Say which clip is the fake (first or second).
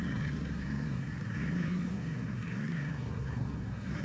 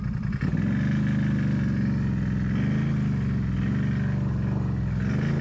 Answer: first